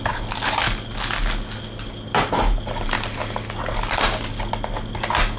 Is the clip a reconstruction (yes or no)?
no